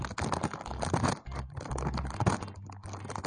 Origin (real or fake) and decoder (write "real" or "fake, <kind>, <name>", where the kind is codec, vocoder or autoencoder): real